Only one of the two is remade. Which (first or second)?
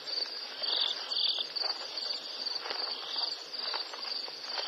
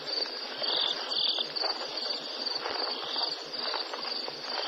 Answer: second